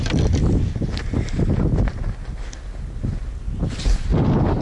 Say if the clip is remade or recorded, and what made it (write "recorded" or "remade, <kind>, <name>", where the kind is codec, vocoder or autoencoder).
recorded